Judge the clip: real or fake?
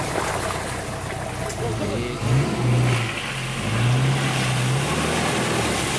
real